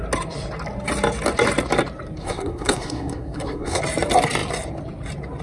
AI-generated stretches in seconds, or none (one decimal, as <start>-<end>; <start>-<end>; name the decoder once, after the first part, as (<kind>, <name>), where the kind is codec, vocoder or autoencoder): 2.2-3.8 (codec, SNAC)